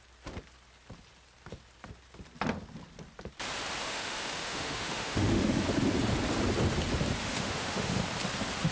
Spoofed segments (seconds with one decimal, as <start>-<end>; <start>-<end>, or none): 3.8-5.6; 7.2-8.0